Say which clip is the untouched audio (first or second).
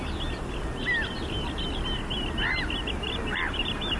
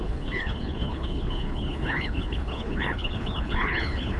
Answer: first